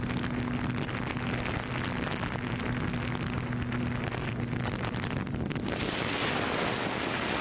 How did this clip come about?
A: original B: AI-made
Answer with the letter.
A